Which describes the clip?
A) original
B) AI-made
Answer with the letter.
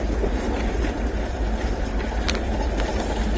A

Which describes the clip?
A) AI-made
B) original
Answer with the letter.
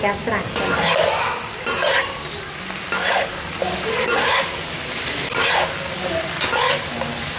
B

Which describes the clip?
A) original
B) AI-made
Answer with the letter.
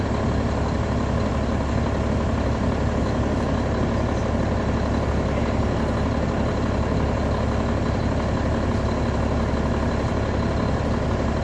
A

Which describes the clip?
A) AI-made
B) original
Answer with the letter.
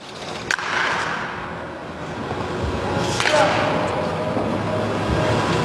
B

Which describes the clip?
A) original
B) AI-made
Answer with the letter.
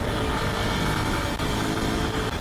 A